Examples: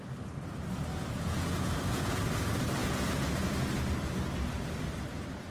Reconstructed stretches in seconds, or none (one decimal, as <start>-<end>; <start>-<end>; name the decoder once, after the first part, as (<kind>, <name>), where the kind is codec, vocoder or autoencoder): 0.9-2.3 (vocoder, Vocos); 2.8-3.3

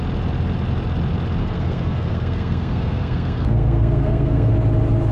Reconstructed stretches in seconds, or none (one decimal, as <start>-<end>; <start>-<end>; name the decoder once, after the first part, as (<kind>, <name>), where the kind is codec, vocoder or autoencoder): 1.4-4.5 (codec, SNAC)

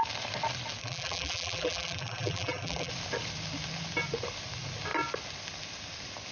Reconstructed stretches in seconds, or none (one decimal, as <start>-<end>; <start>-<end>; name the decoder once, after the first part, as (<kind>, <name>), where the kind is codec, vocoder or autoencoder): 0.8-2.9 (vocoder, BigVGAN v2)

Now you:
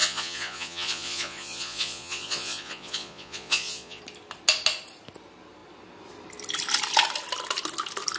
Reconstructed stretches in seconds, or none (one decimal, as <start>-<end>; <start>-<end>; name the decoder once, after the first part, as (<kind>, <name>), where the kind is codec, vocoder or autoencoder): 0.0-4.0 (vocoder, Vocos)

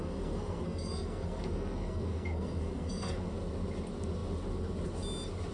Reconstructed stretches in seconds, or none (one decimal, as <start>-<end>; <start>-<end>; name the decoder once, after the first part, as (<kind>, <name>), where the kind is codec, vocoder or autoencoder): 0.0-3.3 (codec, SNAC)

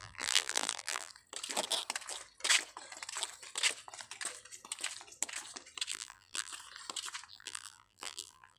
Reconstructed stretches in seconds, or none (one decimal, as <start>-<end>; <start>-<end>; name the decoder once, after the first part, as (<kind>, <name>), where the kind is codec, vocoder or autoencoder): 0.0-1.1 (vocoder, BigVGAN v2); 5.9-6.5; 7.3-8.6

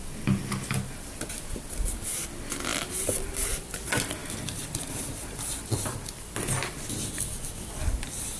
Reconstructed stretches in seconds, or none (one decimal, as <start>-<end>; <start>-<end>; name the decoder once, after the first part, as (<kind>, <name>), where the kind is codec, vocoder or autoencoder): 2.7-3.8 (vocoder, BigVGAN v2); 4.2-5.5